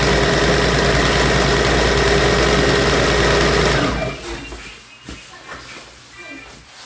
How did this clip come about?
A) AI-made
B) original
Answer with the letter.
B